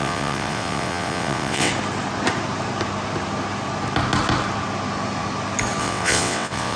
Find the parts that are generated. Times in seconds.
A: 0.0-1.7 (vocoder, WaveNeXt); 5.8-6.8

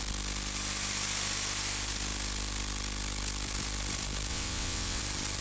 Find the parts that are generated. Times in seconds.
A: 4.3-5.0 (vocoder, WaveNeXt)

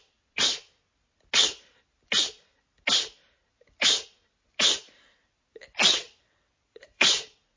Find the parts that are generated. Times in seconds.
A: 5.8-7.1 (vocoder, WaveNeXt)

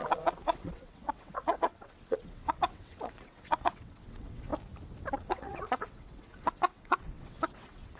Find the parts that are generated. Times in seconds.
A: 0.0-4.5 (vocoder, WaveNeXt); 5.1-8.0

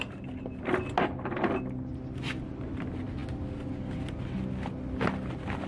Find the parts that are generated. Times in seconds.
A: none

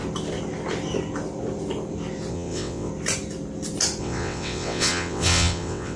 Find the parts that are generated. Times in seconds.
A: 2.3-2.9 (vocoder, WaveNeXt); 4.0-6.0

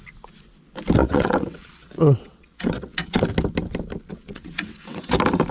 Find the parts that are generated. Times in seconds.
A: 1.0-3.2 (vocoder, WaveNeXt); 4.1-5.1